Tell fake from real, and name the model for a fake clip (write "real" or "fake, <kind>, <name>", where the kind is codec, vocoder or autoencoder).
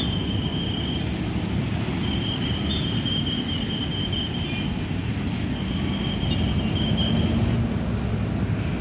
real